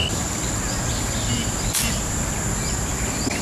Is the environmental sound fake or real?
real